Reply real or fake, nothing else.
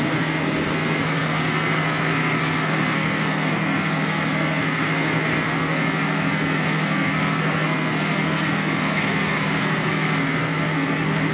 fake